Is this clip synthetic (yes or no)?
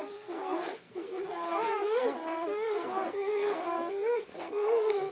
yes